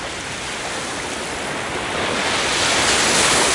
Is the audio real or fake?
real